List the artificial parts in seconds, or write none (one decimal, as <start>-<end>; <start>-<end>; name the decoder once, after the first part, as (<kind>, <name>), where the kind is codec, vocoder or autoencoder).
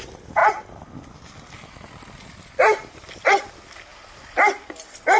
none